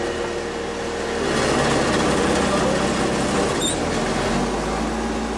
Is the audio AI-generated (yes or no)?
no